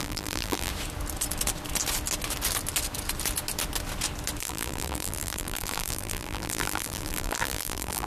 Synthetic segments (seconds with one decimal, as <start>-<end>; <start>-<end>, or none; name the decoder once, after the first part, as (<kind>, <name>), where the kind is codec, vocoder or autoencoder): 0.0-0.7 (vocoder, BigVGAN v2); 4.4-8.1